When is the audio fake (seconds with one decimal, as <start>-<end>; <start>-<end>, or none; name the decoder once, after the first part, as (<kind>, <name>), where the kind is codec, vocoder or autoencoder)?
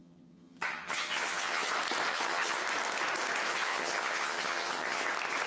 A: 0.0-1.7 (vocoder, HiFi-GAN); 2.1-2.6; 3.5-5.0